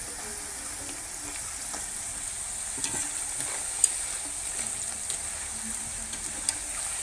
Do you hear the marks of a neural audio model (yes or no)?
no